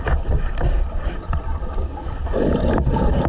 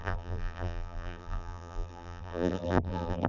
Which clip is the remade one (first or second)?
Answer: second